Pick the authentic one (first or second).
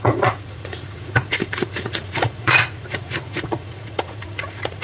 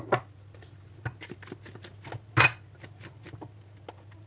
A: second